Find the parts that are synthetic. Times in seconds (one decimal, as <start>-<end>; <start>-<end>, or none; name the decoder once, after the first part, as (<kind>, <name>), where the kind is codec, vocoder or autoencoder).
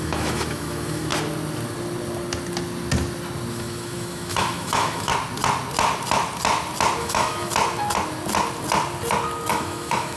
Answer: 0.0-1.1 (autoencoder, DAC-VAE); 3.5-5.1; 7.0-7.5; 9.5-10.2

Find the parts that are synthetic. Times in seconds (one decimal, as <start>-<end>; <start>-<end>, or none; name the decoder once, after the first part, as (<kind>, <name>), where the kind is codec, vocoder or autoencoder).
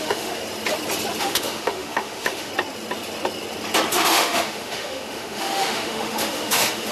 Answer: 0.0-0.4 (autoencoder, DAC-VAE); 1.2-2.5; 3.9-6.9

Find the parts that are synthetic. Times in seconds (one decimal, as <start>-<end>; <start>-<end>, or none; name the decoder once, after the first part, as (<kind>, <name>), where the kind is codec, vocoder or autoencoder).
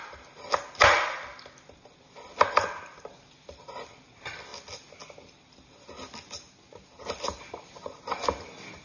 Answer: none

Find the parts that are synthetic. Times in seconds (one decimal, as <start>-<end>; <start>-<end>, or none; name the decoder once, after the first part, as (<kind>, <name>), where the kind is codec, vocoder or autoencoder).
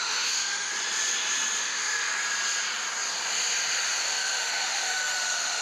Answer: 0.0-0.7 (autoencoder, DAC-VAE); 1.6-2.1; 4.0-5.6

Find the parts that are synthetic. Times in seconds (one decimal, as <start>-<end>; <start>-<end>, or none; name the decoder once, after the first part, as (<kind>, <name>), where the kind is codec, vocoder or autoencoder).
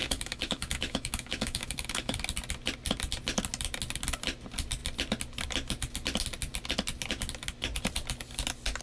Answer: 0.0-2.2 (autoencoder, DAC-VAE)